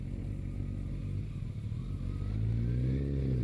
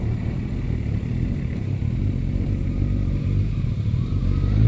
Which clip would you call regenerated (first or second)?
second